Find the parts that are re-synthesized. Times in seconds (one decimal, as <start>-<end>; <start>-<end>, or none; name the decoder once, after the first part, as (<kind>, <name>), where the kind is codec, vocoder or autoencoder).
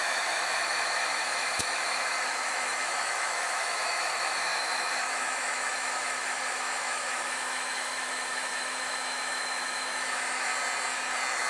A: 0.0-10.5 (autoencoder, DAC-VAE)